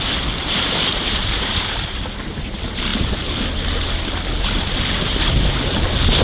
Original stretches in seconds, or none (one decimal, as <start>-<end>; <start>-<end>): 0.0-0.9; 1.6-6.2